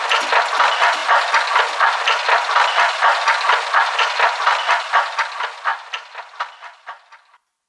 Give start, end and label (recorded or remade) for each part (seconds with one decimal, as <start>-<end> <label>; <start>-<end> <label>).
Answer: 0.0-7.7 recorded